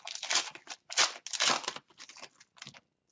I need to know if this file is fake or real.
real